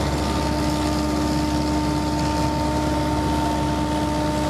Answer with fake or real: real